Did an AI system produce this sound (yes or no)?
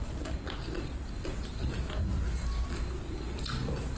no